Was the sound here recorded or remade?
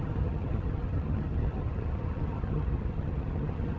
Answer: remade